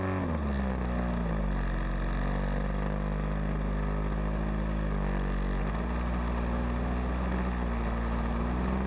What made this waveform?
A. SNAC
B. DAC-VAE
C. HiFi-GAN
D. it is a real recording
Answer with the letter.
D